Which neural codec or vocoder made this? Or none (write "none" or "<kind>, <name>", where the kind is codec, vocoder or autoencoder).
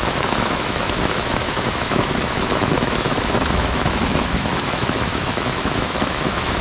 autoencoder, DAC-VAE